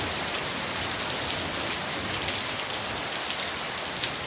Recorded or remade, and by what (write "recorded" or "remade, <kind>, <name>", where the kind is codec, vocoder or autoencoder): recorded